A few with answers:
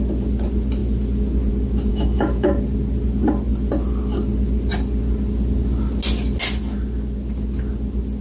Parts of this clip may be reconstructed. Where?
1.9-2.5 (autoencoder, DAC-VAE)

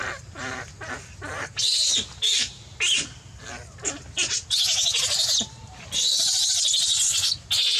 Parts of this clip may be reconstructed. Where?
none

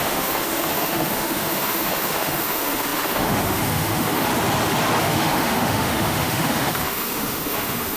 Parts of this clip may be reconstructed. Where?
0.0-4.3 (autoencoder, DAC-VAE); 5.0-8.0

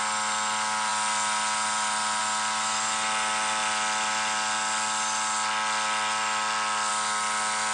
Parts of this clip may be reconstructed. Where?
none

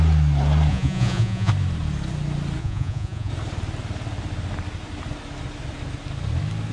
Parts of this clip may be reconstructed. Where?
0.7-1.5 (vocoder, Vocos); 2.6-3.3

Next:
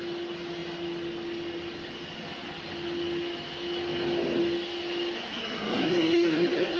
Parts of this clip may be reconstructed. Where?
5.3-6.8 (codec, SNAC)